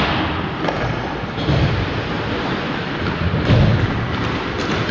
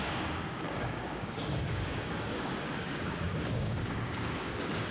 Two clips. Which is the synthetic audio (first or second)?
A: second